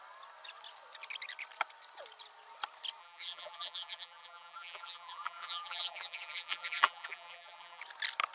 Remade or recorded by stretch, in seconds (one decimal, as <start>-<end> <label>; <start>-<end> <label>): 0.0-3.0 recorded; 3.0-7.8 remade; 7.8-8.3 recorded